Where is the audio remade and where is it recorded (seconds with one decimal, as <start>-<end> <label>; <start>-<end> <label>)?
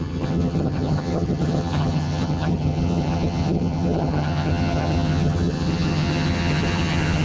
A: 0.0-7.2 remade